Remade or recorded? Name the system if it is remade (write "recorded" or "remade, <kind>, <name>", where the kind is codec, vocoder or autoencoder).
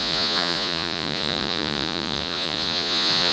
remade, vocoder, Vocos